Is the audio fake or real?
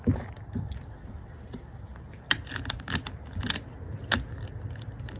real